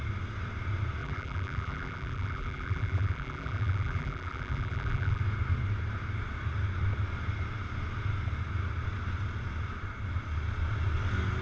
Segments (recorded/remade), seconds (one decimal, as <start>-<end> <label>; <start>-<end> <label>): 0.0-1.0 recorded; 1.0-5.2 remade; 5.2-11.4 recorded